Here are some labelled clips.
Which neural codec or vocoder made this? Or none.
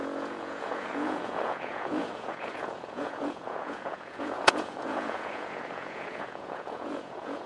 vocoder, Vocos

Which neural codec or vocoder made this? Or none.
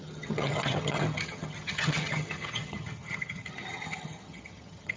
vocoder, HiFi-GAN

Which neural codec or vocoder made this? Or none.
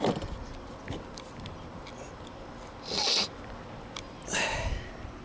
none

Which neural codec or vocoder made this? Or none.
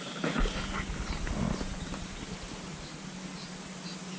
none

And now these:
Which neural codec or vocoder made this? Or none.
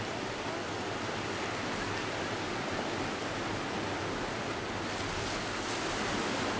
none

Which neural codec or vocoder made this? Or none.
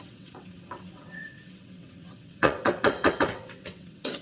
vocoder, WaveNeXt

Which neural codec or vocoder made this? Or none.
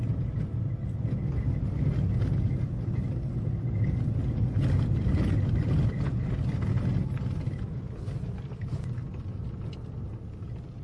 none